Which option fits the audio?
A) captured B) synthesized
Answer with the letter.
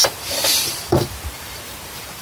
B